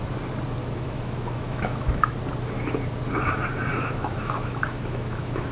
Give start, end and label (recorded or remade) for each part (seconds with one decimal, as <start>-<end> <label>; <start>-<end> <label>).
0.0-0.6 recorded; 0.6-2.1 remade; 2.1-3.7 recorded; 3.7-5.5 remade